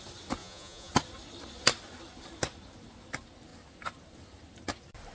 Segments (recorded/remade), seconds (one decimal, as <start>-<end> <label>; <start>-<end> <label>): 0.0-0.4 recorded; 0.4-0.9 remade; 0.9-5.1 recorded